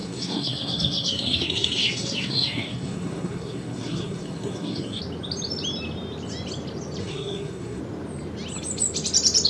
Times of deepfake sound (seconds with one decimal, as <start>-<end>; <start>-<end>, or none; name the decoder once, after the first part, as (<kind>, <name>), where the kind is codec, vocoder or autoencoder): 0.0-5.0 (codec, SNAC); 7.0-7.8